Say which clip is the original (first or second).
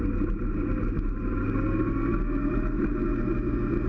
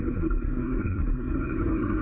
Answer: first